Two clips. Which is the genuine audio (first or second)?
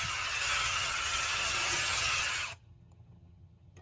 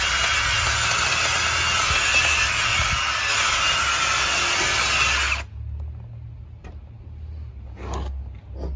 second